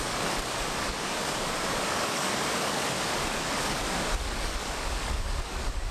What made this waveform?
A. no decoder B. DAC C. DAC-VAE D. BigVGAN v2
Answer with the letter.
B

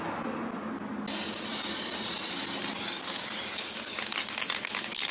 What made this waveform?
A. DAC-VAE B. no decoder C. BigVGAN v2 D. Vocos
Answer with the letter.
B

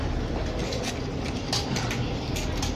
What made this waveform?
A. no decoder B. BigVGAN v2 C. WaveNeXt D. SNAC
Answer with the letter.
A